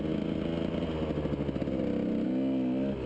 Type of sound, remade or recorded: recorded